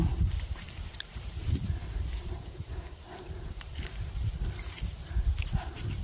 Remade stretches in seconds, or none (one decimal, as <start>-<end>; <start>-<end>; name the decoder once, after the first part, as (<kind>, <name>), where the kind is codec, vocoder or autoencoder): 0.0-6.0 (vocoder, BigVGAN v2)